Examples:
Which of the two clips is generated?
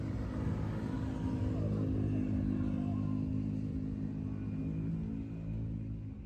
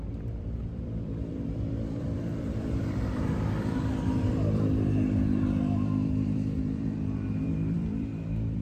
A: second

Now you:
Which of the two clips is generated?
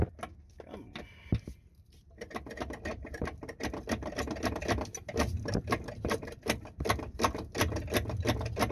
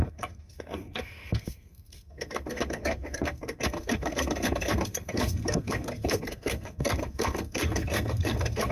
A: second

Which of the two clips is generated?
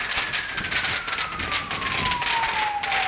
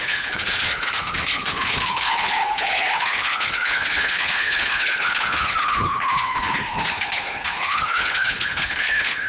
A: second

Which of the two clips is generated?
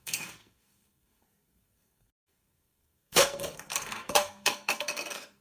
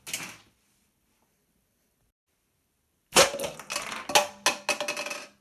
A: first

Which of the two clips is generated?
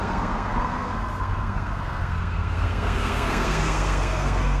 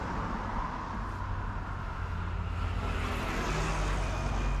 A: first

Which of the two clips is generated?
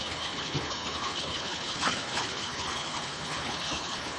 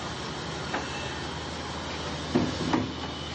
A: first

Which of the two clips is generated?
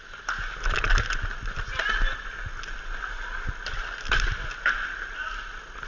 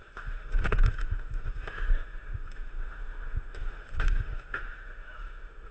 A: second